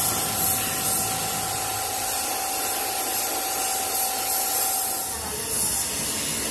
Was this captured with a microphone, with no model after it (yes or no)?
yes